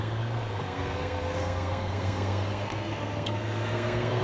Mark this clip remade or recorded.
remade